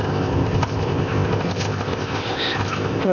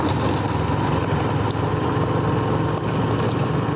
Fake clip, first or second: first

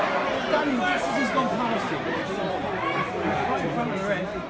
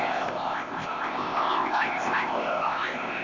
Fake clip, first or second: second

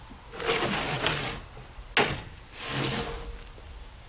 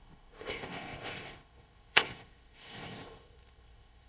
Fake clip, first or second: second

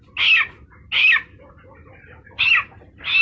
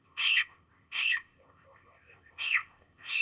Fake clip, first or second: second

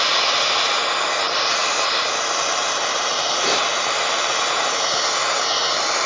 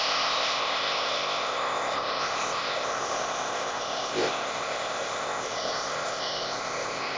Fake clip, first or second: second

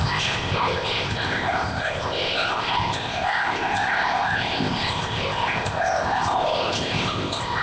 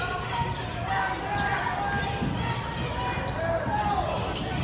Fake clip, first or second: first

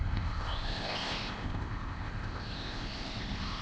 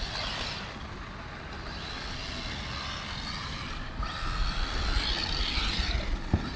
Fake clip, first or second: first